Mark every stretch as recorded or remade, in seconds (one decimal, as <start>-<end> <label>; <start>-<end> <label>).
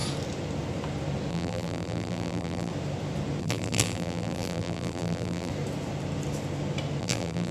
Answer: 0.0-1.3 recorded; 1.3-2.7 remade; 2.7-3.4 recorded; 3.4-5.5 remade; 5.5-7.0 recorded; 7.0-7.5 remade